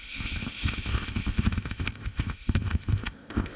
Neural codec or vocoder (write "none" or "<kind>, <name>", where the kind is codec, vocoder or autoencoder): codec, ZipCodec